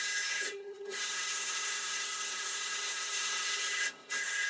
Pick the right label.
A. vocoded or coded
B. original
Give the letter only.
A